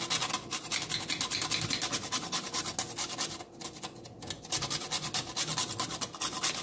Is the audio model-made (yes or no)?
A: no